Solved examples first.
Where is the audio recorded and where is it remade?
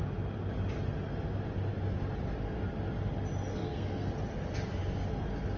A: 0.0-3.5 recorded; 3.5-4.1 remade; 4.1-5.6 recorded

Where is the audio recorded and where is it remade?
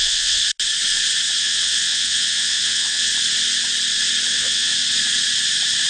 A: 0.0-0.4 remade; 0.4-1.4 recorded; 1.4-3.1 remade; 3.1-4.3 recorded; 4.3-4.7 remade; 4.7-5.9 recorded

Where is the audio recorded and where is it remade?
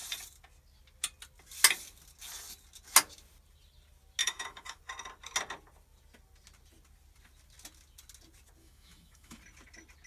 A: 0.0-4.2 recorded; 4.2-4.8 remade; 4.8-8.6 recorded; 8.6-9.4 remade; 9.4-10.1 recorded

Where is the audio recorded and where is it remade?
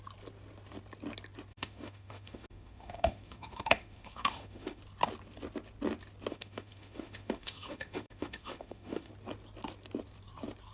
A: 0.0-1.5 recorded; 1.5-4.8 remade; 4.8-6.3 recorded; 6.3-9.1 remade; 9.1-10.7 recorded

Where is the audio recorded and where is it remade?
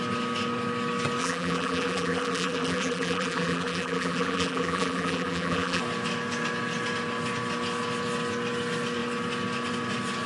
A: 0.0-1.2 recorded; 1.2-5.8 remade; 5.8-10.3 recorded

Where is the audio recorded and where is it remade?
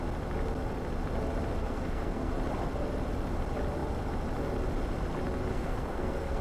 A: 0.0-1.6 recorded; 1.6-2.3 remade; 2.3-5.5 recorded; 5.5-6.4 remade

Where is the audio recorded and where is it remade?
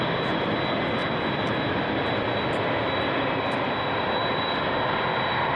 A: 0.0-1.0 recorded; 1.0-2.3 remade; 2.3-5.6 recorded